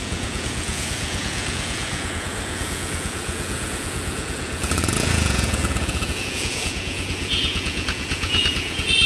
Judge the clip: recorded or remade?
remade